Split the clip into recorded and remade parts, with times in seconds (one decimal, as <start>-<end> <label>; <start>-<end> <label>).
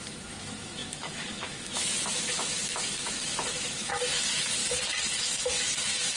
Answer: 0.0-4.6 remade; 4.6-5.2 recorded; 5.2-6.2 remade